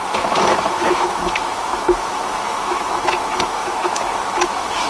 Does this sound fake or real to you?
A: fake